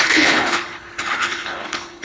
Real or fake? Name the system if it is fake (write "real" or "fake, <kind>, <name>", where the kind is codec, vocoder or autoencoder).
fake, codec, HILCodec